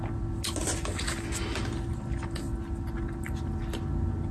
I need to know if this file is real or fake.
real